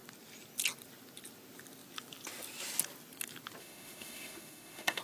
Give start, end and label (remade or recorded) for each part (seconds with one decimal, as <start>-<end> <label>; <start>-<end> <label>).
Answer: 0.0-3.6 recorded; 3.6-5.0 remade